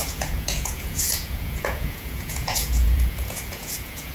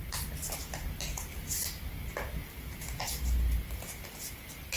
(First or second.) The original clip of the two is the second